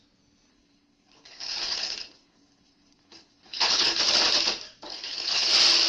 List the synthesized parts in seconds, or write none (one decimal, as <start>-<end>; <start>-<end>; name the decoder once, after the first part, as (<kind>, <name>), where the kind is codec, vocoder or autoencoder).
0.5-4.0 (codec, HILCodec); 4.9-5.5